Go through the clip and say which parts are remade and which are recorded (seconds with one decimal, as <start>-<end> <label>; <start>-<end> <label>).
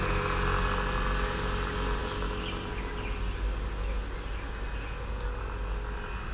0.0-6.3 recorded